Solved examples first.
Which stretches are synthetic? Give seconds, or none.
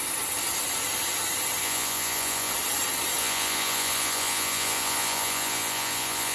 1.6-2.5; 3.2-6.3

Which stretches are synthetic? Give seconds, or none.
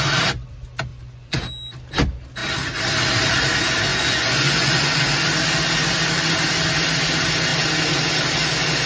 0.9-1.4; 3.9-5.0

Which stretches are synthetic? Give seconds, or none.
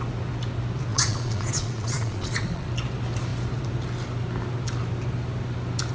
0.9-2.7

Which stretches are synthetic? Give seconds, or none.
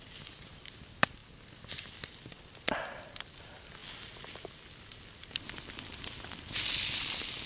none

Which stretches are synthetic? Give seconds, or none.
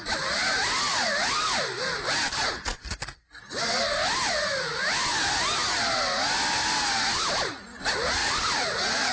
8.2-9.1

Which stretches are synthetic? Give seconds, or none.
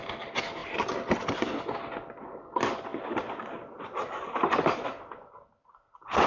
none